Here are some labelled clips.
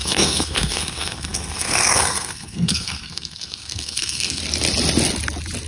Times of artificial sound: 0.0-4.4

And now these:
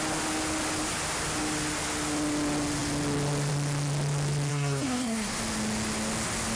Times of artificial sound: 4.5-5.4

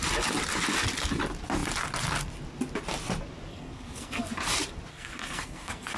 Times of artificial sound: 3.5-4.3; 4.9-6.0

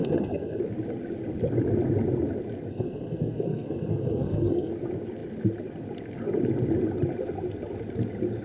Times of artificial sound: 0.0-0.6; 2.7-4.7

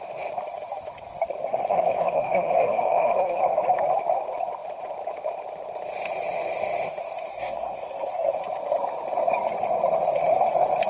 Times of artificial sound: 1.4-3.4; 7.3-8.4